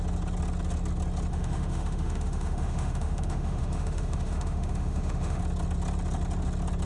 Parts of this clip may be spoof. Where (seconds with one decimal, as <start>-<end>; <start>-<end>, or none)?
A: 1.3-5.4